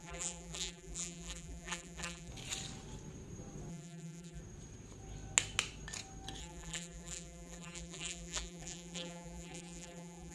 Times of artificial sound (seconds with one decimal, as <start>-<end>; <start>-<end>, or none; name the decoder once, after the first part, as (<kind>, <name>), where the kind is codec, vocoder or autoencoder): 0.0-2.3 (vocoder, BigVGAN v2); 3.7-4.4; 6.4-10.3